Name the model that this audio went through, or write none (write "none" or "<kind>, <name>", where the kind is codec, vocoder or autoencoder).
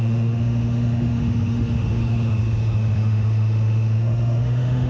autoencoder, DAC-VAE